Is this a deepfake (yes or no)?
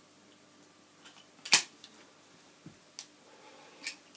no